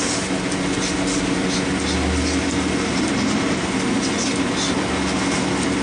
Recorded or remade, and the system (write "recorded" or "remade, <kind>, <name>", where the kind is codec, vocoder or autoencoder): recorded